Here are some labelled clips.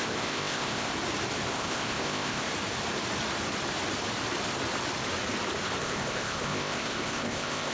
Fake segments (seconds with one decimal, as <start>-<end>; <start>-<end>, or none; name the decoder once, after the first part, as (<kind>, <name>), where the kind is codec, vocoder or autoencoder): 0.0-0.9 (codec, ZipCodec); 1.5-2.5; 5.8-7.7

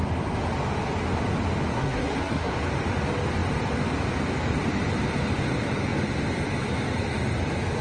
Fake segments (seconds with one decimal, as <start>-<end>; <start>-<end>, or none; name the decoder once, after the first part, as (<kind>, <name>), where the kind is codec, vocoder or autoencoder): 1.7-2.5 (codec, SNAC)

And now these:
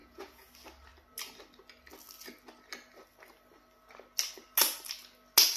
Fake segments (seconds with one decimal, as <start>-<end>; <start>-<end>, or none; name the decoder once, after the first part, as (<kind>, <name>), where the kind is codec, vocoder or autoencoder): 0.0-0.5 (vocoder, Vocos)

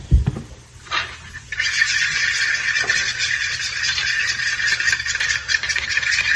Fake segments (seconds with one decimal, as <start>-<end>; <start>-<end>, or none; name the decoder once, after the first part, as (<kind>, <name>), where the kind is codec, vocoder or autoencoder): none

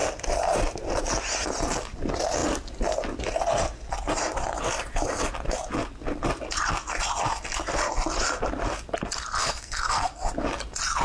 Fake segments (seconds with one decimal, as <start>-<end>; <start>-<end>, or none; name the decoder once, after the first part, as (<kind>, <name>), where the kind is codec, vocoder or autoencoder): 9.4-10.3 (codec, SNAC)

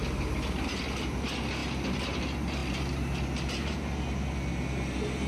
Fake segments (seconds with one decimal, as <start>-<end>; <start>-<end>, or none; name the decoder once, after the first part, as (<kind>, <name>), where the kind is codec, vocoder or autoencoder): none